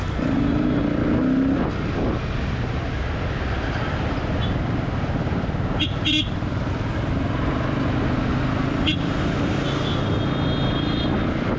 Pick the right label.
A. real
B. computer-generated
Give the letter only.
A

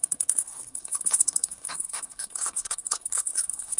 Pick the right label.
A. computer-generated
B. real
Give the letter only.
A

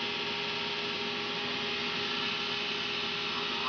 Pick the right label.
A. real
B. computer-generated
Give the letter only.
A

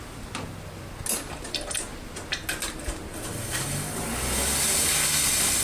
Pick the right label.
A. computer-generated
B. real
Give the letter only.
B